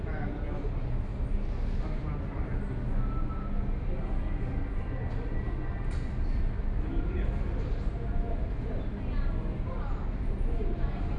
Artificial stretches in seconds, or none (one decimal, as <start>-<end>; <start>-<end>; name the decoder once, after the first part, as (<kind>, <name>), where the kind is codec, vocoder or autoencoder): none